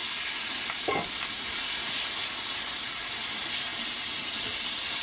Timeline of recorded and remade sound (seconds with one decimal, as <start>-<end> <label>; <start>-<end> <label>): 0.0-5.0 recorded